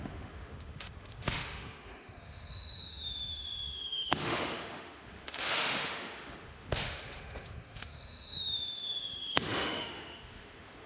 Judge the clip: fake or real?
fake